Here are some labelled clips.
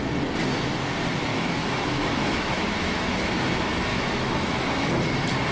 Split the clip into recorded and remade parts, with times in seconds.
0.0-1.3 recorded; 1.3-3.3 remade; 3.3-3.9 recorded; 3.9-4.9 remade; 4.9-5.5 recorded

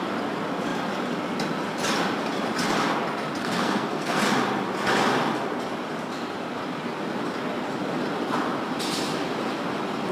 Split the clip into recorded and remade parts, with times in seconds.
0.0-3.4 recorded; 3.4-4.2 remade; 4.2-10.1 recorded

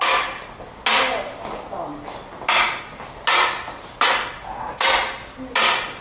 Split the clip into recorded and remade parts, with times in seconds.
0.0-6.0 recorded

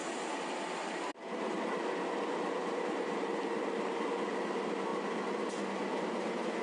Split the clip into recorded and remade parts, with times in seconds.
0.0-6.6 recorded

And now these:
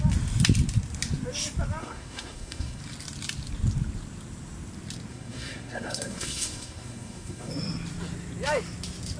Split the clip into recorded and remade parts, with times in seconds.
0.0-1.8 recorded; 1.8-2.8 remade; 2.8-5.1 recorded; 5.1-7.5 remade; 7.5-9.2 recorded